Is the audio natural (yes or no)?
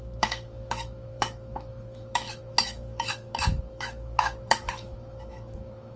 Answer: no